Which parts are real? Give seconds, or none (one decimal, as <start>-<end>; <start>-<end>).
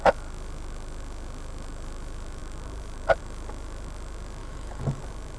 0.0-4.4; 5.0-5.4